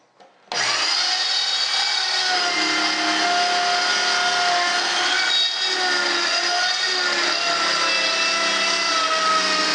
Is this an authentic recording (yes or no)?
yes